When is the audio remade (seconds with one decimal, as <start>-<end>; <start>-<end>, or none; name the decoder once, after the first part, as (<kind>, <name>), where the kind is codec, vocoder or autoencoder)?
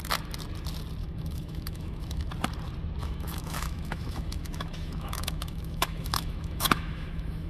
1.0-2.3 (autoencoder, DAC-VAE); 3.0-7.5